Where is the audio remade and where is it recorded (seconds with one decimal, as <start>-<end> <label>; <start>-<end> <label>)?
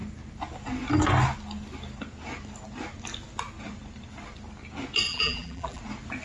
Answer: 0.0-5.1 recorded; 5.1-5.8 remade; 5.8-6.2 recorded